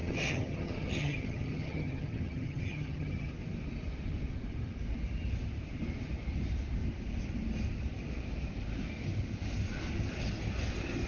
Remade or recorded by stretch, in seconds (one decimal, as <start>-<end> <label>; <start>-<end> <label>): 0.0-3.3 remade; 3.3-11.1 recorded

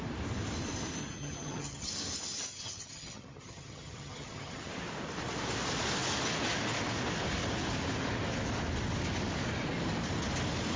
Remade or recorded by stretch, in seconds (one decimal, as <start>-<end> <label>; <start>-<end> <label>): 0.0-1.0 recorded; 1.0-1.9 remade; 1.9-2.5 recorded; 2.5-4.7 remade; 4.7-10.8 recorded

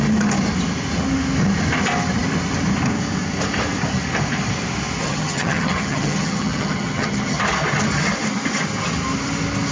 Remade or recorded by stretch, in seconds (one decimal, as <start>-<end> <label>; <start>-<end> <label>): 0.0-5.0 recorded; 5.0-7.4 remade; 7.4-9.7 recorded

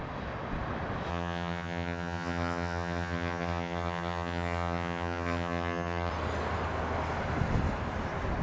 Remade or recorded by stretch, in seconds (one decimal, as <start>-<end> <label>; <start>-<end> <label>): 0.0-1.1 recorded; 1.1-6.1 remade; 6.1-8.4 recorded